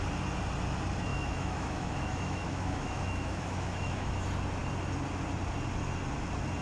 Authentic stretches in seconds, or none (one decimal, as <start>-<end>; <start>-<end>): 0.0-1.1; 4.1-6.6